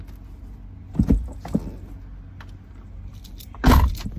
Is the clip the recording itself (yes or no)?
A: yes